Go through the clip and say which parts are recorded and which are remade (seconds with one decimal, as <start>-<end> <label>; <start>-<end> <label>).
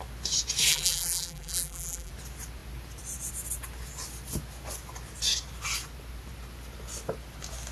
0.0-0.7 recorded; 0.7-2.1 remade; 2.1-7.7 recorded